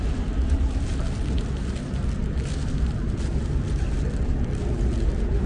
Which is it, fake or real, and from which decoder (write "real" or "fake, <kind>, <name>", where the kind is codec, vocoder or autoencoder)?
real